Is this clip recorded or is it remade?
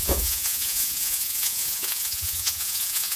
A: remade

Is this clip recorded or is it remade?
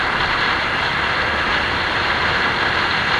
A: recorded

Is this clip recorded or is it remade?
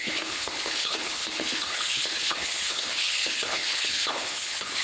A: remade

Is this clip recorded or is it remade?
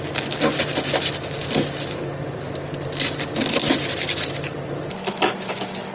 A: recorded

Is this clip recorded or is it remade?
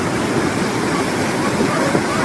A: recorded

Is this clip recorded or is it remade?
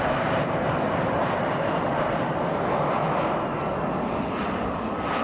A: recorded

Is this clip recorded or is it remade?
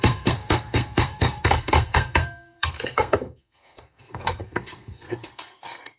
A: remade